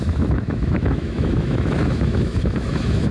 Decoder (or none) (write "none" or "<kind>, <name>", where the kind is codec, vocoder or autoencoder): autoencoder, DAC-VAE